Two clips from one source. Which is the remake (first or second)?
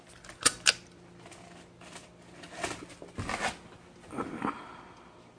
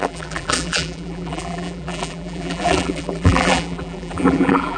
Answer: second